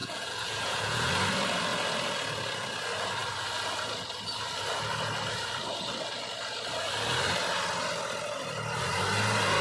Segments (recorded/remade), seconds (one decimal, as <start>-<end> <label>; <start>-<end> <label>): 0.0-1.1 remade; 1.1-9.6 recorded